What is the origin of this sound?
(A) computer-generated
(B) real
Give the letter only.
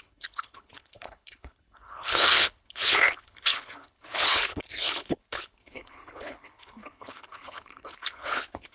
A